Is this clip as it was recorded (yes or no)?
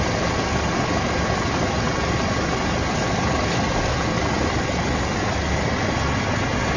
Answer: yes